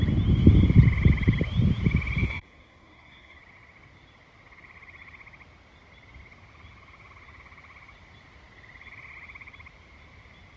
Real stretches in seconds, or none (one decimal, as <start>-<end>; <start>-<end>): 0.0-2.2; 3.4-10.6

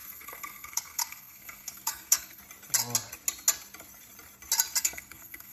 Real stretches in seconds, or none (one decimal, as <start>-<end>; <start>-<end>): 2.4-4.8

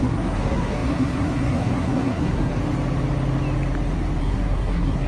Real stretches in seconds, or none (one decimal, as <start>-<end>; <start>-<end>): 2.6-4.2

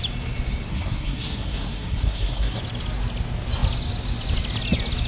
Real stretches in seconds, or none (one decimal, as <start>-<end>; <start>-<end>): 0.0-0.7; 2.6-5.1

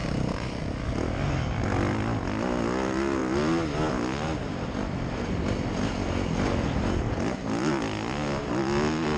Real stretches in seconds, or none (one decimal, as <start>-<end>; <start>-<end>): 0.0-9.2

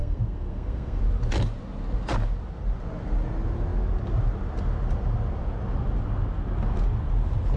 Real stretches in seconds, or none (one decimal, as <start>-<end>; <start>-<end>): 1.0-7.6